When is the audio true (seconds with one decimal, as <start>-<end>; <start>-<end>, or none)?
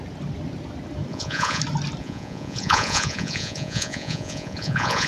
0.0-1.1; 1.6-2.0